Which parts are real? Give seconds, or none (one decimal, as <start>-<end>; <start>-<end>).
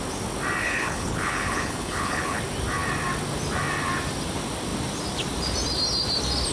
0.0-0.6; 2.4-6.5